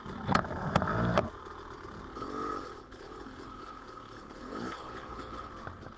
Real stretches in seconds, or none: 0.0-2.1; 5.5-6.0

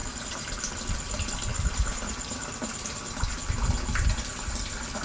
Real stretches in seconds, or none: 0.7-1.5; 3.2-5.0

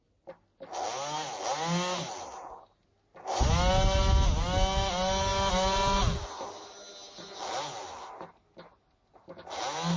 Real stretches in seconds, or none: 0.0-10.0

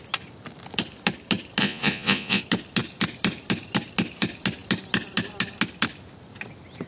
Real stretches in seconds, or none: 0.0-1.6; 2.4-6.9

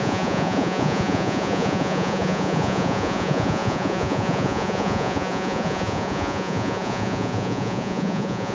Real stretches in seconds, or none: none

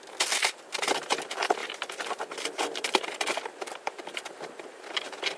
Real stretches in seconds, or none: 0.0-1.6; 4.8-5.4